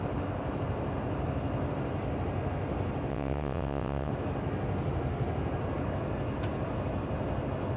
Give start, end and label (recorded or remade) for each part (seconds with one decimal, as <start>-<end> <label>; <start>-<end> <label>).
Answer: 0.0-3.1 recorded; 3.1-4.1 remade; 4.1-7.8 recorded